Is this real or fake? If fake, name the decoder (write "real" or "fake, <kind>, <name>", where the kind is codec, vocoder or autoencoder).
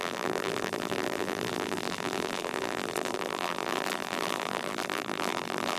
fake, vocoder, BigVGAN v2